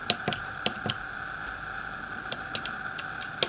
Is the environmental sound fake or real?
real